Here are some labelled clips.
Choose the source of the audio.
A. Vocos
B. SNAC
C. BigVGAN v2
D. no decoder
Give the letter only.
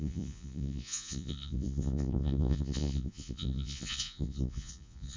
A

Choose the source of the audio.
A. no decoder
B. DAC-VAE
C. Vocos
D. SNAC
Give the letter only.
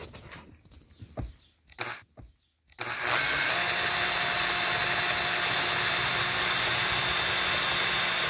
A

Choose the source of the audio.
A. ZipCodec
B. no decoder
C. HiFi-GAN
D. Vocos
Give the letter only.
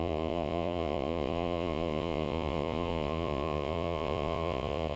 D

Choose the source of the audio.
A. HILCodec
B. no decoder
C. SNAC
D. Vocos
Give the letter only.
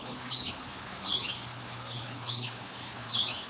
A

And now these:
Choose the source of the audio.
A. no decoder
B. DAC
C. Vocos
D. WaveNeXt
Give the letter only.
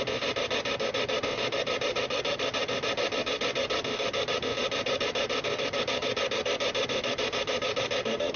A